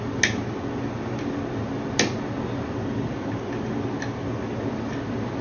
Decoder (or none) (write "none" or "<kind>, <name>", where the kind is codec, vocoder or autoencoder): none